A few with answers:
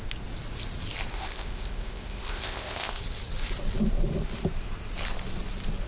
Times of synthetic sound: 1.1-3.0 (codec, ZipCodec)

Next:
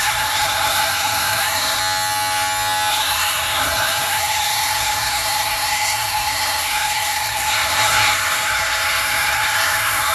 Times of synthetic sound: 0.0-1.8 (codec, SNAC); 2.9-10.1

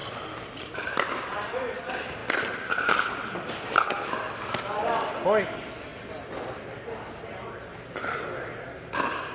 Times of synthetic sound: none

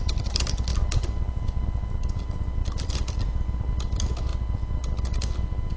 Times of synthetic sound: 0.7-3.7 (vocoder, BigVGAN v2)

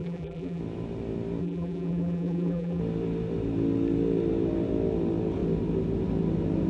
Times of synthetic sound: 0.0-0.6 (vocoder, BigVGAN v2); 1.4-2.8